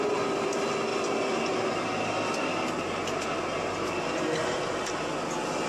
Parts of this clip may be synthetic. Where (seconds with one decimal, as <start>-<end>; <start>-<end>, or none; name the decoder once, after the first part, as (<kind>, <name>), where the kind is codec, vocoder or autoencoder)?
none